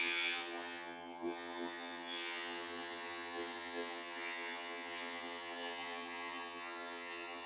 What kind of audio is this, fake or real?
fake